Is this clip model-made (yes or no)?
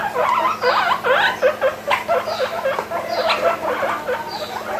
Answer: no